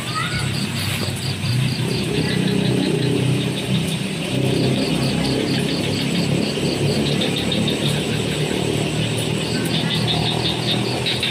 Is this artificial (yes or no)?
no